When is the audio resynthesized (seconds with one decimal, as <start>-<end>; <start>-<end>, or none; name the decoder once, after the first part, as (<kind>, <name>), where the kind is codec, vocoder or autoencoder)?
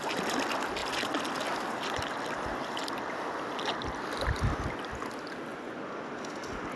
5.5-6.1 (vocoder, Vocos)